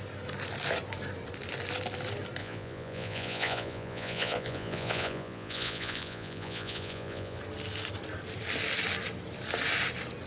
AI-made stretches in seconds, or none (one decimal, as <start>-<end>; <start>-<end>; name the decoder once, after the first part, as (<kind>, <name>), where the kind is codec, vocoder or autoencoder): 2.4-7.4 (vocoder, Vocos)